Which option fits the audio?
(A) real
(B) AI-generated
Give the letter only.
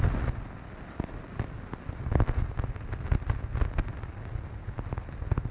A